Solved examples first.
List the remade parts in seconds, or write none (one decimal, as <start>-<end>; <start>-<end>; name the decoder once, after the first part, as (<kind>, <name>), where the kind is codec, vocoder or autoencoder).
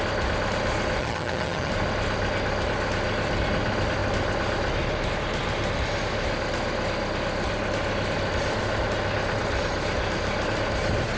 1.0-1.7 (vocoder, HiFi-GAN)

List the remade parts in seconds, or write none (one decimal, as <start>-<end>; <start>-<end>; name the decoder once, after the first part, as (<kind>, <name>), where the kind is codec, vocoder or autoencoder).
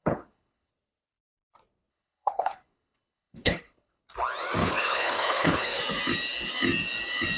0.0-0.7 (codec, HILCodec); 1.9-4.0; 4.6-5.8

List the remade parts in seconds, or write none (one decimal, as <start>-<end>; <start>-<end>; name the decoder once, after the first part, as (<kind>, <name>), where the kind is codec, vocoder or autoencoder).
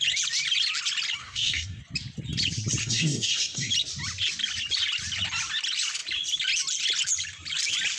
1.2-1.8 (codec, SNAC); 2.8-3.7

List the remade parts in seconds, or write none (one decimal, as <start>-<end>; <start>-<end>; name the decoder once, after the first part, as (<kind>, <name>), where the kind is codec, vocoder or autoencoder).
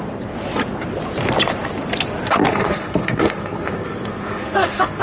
2.5-5.0 (codec, SNAC)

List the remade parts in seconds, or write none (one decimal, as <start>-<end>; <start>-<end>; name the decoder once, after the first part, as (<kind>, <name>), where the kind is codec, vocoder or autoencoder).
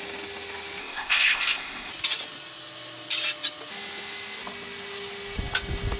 0.8-1.9 (codec, ZipCodec)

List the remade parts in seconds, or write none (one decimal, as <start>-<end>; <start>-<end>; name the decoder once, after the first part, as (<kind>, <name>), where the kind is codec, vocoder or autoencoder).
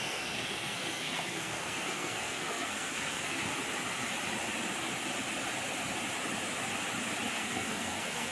0.0-3.5 (codec, SNAC); 7.3-8.3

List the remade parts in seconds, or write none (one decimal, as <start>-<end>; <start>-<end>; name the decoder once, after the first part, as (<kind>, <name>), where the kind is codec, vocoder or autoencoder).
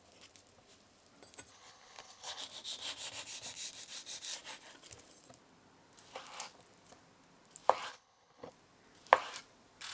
1.5-2.4 (codec, HILCodec); 7.9-8.5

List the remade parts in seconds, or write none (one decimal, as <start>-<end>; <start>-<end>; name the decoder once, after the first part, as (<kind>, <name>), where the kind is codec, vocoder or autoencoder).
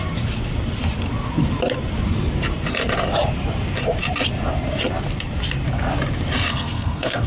6.5-7.3 (codec, SNAC)